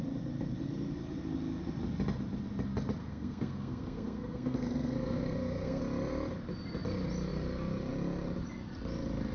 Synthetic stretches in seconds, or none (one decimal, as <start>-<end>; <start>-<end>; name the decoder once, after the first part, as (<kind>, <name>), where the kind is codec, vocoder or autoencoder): 3.0-5.8 (codec, SNAC)